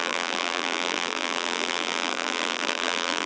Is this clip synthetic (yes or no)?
yes